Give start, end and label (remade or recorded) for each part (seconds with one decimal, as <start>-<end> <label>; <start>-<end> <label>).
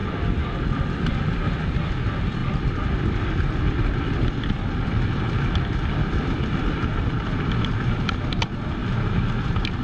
0.0-9.8 recorded